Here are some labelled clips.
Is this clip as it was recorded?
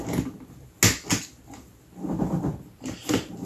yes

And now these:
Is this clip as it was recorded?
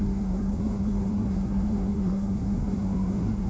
no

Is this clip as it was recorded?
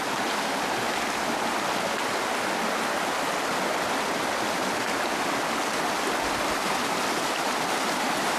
yes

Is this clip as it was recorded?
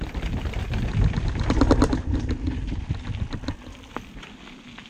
yes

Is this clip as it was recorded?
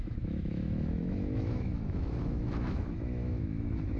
no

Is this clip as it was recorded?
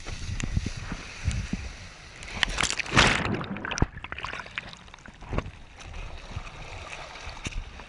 yes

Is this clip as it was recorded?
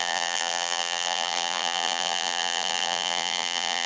no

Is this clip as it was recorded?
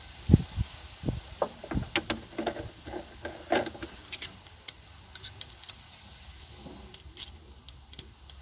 yes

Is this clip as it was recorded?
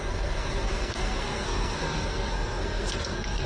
no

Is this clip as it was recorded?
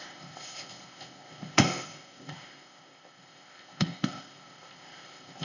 no